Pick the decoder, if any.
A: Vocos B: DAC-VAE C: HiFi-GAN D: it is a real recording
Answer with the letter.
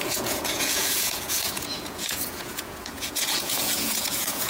A